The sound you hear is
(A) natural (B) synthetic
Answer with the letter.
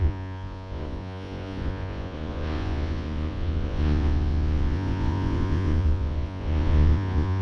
B